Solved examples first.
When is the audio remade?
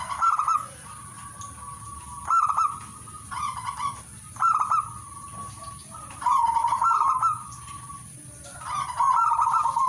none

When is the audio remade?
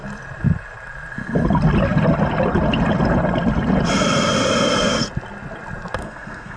6.0-6.6 (codec, SNAC)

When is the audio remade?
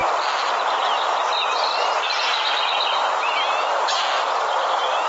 none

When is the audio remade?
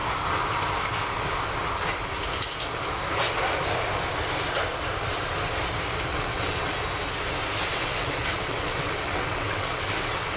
6.1-6.7 (vocoder, WaveNeXt); 7.7-10.4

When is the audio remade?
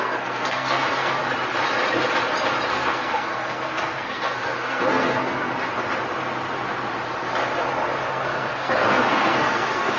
0.0-1.2 (codec, SNAC); 2.7-5.5; 8.1-10.0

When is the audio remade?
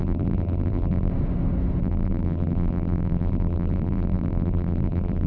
0.0-1.1 (vocoder, BigVGAN v2); 1.8-5.3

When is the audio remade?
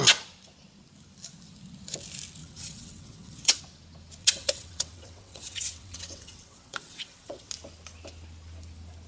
2.4-3.6 (vocoder, WaveNeXt); 4.2-7.5